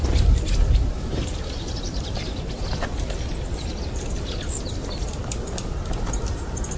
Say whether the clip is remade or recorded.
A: recorded